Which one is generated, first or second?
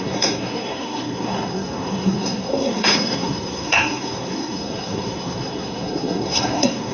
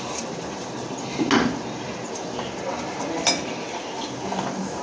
first